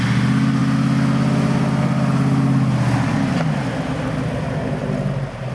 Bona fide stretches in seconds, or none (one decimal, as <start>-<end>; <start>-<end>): 0.0-5.5